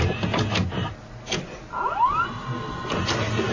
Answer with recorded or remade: recorded